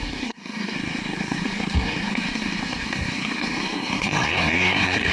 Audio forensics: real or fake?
fake